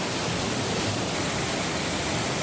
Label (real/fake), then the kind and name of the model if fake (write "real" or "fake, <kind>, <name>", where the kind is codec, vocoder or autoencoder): real